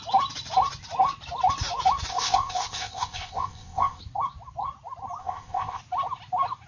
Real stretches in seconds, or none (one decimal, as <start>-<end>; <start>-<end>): 0.0-2.1; 4.0-5.2; 5.8-6.7